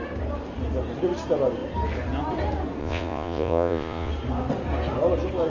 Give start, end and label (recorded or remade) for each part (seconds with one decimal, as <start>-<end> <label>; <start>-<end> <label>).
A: 0.0-2.8 recorded; 2.8-4.1 remade; 4.1-5.5 recorded